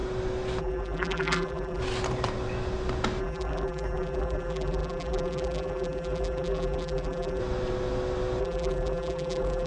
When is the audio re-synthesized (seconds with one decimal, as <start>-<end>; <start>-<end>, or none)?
0.6-1.8; 3.2-7.4; 8.4-9.7